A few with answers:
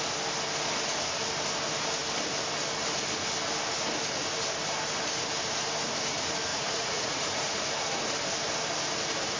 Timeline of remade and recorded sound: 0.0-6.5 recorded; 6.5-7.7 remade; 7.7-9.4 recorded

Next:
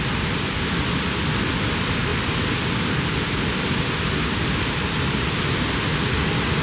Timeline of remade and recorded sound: 0.0-6.6 recorded

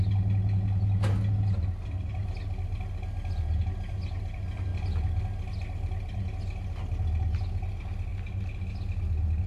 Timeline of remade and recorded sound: 0.0-9.5 recorded

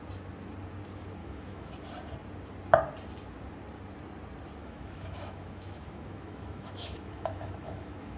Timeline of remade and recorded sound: 0.0-1.2 recorded; 1.2-1.7 remade; 1.7-4.6 recorded; 4.6-8.2 remade